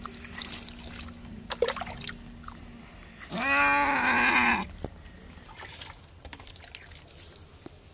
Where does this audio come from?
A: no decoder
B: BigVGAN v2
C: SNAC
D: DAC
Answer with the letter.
A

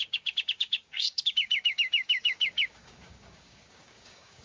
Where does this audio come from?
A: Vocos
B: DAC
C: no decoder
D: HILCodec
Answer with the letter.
B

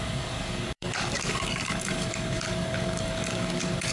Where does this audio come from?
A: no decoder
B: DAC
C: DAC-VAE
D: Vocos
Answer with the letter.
B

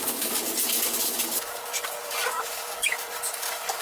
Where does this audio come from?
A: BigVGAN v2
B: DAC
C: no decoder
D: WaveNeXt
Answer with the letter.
B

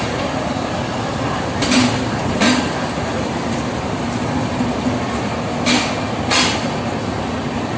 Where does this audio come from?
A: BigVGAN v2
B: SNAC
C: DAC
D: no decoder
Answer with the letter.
D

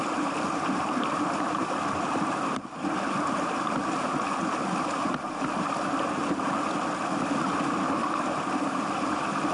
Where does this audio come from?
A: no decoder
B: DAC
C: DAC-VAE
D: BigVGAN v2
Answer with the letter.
A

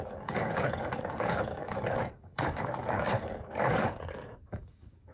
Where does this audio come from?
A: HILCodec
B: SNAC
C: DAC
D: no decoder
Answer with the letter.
C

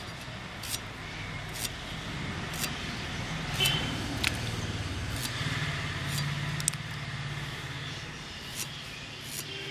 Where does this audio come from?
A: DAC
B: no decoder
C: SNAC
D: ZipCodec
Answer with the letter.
B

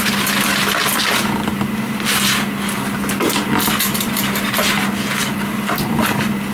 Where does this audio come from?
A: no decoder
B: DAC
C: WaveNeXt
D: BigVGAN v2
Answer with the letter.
A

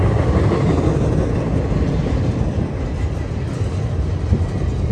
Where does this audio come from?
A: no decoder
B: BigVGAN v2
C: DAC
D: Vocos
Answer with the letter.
A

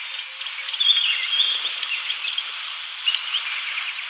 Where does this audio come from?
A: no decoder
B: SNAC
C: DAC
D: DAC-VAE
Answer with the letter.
A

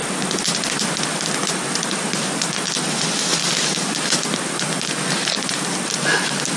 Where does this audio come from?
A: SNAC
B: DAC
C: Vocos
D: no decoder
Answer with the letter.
D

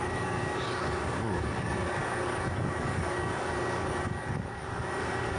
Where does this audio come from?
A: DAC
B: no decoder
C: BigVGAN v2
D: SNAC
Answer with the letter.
A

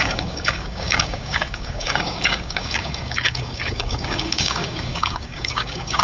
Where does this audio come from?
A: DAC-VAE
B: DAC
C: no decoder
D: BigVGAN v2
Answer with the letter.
B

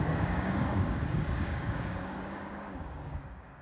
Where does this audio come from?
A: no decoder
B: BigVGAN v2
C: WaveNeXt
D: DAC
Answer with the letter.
D